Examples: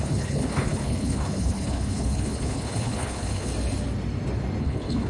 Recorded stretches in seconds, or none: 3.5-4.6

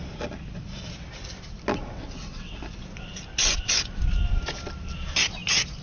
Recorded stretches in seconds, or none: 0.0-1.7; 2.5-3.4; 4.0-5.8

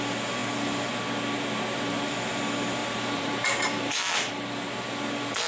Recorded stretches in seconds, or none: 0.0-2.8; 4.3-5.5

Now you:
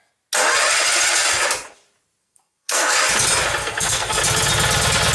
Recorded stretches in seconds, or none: 0.0-2.2; 3.0-3.6; 4.2-5.1